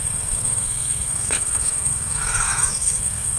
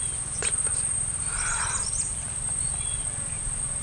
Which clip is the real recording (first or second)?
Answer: second